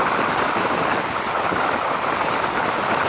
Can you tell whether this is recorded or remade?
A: recorded